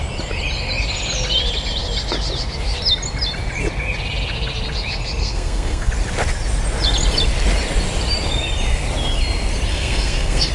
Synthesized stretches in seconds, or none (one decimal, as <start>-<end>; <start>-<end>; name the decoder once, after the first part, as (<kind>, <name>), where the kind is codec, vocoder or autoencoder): 5.2-5.9 (codec, SNAC); 9.7-10.5